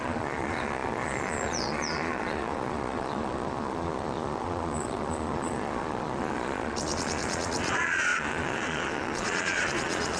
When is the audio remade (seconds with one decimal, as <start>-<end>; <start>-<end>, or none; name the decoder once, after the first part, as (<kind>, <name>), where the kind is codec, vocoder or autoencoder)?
0.0-10.2 (vocoder, Vocos)